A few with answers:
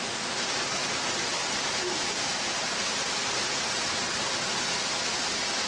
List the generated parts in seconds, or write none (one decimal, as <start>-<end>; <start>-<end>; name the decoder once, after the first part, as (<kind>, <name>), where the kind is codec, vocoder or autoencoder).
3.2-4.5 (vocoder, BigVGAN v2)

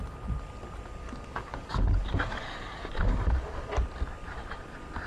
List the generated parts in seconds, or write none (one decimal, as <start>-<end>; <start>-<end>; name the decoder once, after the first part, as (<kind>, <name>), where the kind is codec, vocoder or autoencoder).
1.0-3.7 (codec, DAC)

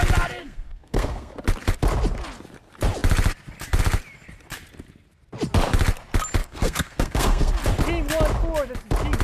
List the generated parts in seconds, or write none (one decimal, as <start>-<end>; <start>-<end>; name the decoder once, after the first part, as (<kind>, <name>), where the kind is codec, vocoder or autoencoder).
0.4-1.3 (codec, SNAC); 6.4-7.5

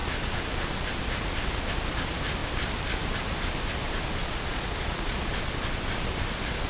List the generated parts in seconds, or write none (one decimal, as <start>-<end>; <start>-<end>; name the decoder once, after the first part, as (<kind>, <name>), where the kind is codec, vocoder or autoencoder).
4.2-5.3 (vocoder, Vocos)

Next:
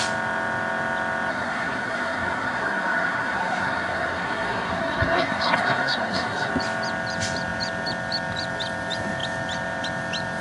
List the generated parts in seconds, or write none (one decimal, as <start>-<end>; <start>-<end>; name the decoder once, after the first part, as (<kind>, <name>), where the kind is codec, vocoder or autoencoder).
1.3-6.5 (codec, SNAC)

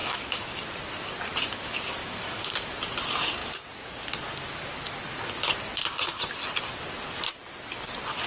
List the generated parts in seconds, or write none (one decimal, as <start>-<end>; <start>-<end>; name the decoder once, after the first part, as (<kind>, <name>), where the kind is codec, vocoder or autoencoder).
0.0-0.6 (autoencoder, DAC-VAE); 2.0-2.5

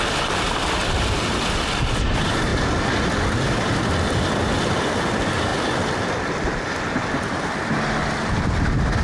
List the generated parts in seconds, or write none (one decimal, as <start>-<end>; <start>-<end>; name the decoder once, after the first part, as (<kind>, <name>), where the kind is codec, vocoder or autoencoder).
0.8-1.4 (vocoder, BigVGAN v2)